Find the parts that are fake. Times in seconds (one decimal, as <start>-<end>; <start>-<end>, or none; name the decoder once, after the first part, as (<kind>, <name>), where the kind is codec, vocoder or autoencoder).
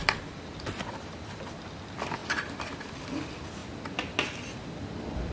0.0-0.5 (vocoder, BigVGAN v2); 2.2-2.7